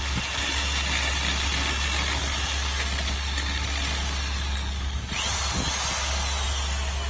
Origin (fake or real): real